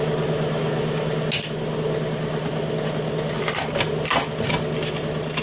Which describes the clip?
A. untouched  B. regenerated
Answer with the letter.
A